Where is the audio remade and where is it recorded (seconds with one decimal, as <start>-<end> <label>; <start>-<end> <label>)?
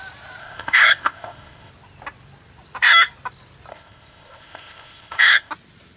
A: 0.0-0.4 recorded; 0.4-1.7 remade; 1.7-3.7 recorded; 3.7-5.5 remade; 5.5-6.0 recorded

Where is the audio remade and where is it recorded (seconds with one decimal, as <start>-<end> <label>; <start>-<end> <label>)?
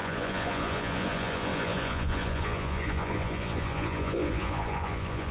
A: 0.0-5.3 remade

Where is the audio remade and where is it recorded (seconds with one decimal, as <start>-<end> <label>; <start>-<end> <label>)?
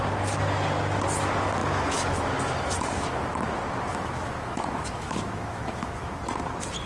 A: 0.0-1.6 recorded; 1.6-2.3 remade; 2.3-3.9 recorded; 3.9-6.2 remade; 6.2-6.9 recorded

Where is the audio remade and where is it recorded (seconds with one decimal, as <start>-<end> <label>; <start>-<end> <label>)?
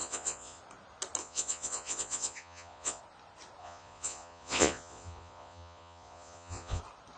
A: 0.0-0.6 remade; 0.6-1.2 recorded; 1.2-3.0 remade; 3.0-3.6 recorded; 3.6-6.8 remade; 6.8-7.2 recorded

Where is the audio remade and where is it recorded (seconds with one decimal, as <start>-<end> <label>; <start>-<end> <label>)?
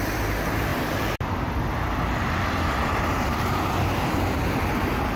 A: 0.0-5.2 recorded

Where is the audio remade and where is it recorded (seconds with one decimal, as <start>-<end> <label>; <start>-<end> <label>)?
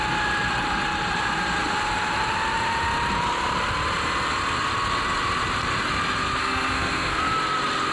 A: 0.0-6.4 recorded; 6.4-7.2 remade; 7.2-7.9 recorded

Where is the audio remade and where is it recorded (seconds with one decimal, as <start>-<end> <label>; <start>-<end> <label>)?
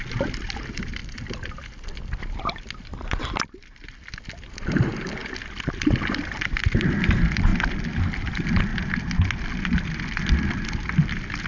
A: 0.0-7.5 remade; 7.5-8.0 recorded; 8.0-8.7 remade; 8.7-11.5 recorded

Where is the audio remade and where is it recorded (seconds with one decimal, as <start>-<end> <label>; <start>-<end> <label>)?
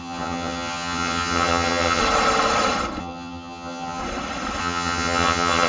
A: 0.0-2.0 remade; 2.0-3.0 recorded; 3.0-4.0 remade; 4.0-4.6 recorded; 4.6-5.7 remade